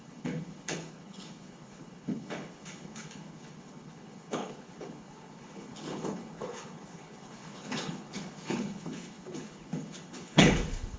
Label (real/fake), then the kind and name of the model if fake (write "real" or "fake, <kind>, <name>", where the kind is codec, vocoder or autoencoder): fake, codec, HILCodec